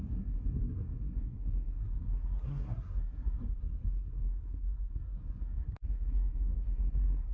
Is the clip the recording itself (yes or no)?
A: no